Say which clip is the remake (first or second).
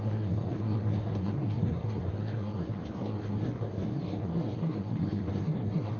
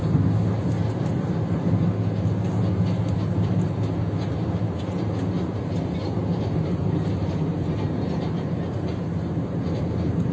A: first